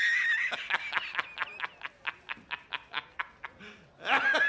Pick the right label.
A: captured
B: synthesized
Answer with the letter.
A